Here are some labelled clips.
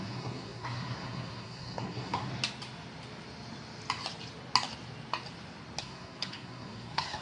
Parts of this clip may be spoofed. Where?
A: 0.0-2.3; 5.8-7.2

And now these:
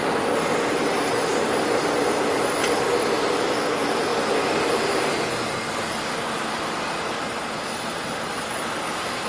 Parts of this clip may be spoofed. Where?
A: none

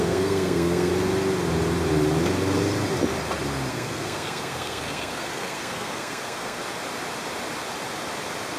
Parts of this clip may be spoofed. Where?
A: 0.0-0.9; 3.7-6.6